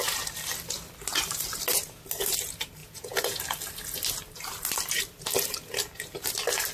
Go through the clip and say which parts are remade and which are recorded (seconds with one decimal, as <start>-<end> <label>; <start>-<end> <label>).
0.0-2.8 recorded; 2.8-3.4 remade; 3.4-6.7 recorded